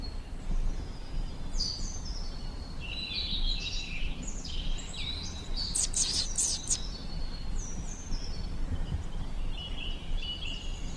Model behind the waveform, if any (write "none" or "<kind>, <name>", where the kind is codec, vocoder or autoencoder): vocoder, BigVGAN v2